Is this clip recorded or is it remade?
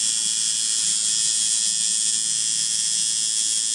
recorded